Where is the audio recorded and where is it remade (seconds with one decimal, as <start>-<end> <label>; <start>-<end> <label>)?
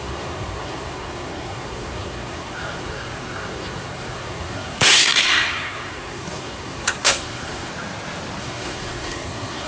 0.0-7.7 remade; 7.7-8.4 recorded; 8.4-9.7 remade